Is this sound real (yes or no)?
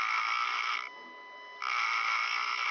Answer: yes